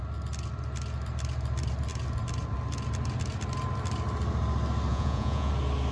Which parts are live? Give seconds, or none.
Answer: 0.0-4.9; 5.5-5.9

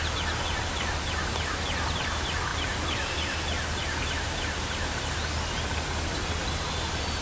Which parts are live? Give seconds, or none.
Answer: 0.0-7.2